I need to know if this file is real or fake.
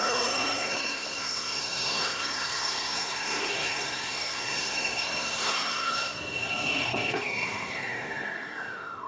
fake